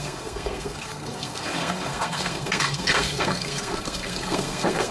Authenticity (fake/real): fake